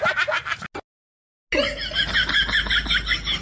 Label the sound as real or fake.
real